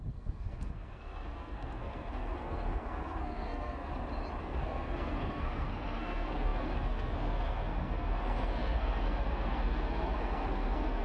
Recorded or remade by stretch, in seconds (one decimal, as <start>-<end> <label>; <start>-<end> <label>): 0.0-3.9 remade; 3.9-4.4 recorded; 4.4-11.0 remade